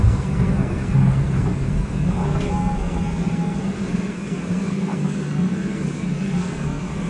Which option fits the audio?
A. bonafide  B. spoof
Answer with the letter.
B